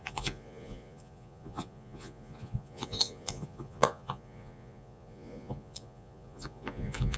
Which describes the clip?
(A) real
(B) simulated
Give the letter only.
B